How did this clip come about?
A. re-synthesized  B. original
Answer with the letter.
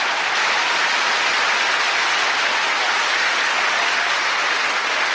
B